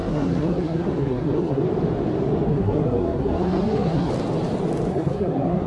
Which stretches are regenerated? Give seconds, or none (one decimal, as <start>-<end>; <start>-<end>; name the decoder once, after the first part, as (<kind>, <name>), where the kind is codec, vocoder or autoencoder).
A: 0.0-1.6 (codec, SNAC); 2.5-4.1; 4.9-5.7

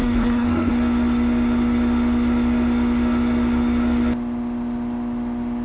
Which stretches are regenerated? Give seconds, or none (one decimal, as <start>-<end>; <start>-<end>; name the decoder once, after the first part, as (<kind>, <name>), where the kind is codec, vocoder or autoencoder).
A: 0.0-0.7 (codec, SNAC)

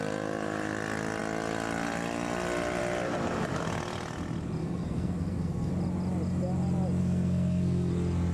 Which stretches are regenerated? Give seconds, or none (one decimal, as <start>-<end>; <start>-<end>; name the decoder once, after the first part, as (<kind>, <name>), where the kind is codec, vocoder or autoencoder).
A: 4.6-5.7 (codec, SNAC); 7.0-7.9

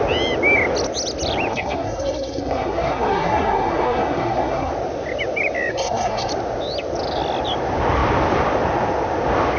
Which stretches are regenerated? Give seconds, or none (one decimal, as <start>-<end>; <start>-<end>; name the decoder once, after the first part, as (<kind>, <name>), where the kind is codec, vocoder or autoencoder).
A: 1.5-4.7 (codec, SNAC); 5.7-6.3

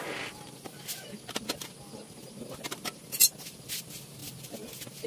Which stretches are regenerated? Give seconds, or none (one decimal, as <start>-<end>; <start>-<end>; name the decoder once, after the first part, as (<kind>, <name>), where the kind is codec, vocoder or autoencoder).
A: none

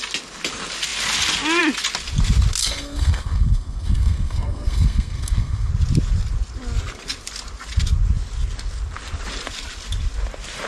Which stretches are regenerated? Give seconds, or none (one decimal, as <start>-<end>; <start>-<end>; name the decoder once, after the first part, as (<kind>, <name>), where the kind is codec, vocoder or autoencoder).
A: 2.6-5.7 (codec, SNAC)